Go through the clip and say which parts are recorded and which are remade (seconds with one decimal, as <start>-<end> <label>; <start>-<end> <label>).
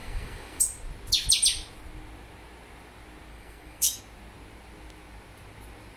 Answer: 0.0-0.6 remade; 0.6-3.3 recorded; 3.3-4.0 remade; 4.0-6.0 recorded